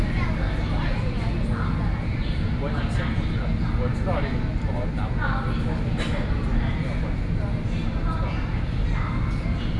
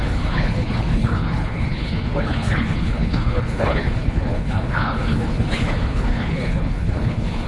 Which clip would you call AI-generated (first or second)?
second